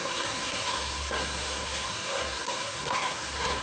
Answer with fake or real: fake